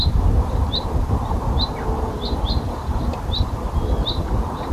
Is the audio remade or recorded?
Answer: recorded